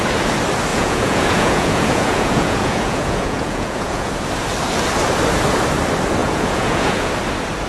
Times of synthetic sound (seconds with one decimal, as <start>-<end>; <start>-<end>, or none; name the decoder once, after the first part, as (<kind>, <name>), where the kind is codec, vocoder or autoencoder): 0.7-4.1 (vocoder, Vocos); 6.2-7.1